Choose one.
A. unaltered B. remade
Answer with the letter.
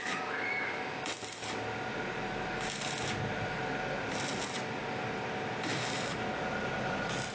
A